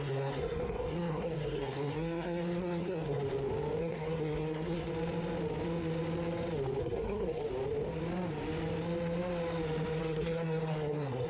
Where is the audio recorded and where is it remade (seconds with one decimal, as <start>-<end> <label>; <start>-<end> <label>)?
0.0-3.2 remade; 3.2-3.8 recorded; 3.8-4.9 remade; 4.9-6.8 recorded; 6.8-7.4 remade; 7.4-10.0 recorded; 10.0-11.3 remade